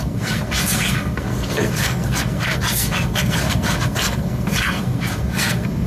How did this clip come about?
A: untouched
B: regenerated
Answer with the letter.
B